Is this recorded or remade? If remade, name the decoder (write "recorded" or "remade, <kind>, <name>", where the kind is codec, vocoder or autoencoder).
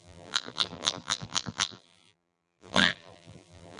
remade, vocoder, BigVGAN v2